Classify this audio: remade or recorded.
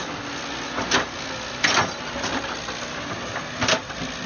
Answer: recorded